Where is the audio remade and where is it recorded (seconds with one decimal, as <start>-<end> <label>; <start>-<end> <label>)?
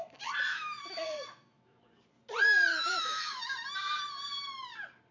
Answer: 0.0-0.5 recorded; 0.5-1.8 remade; 1.8-2.7 recorded; 2.7-3.4 remade; 3.4-5.1 recorded